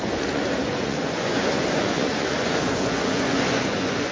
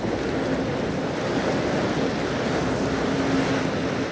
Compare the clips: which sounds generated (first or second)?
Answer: first